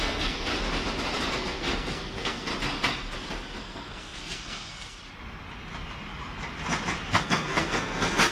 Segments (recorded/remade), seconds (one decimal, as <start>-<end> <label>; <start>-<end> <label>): 0.0-0.5 remade; 0.5-1.3 recorded; 1.3-2.5 remade; 2.5-3.3 recorded; 3.3-5.0 remade; 5.0-7.1 recorded; 7.1-8.3 remade